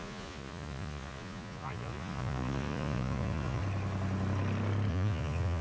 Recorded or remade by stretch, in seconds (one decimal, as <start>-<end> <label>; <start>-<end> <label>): 0.0-3.6 remade; 3.6-4.9 recorded; 4.9-5.6 remade